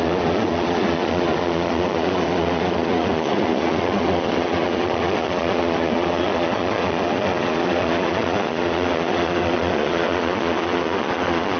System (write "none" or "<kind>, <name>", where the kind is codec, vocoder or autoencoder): vocoder, Vocos